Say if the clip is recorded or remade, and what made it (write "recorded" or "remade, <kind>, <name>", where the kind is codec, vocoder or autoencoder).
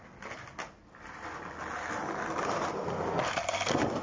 recorded